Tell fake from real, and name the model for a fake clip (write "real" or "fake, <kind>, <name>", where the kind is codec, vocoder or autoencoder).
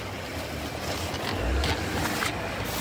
real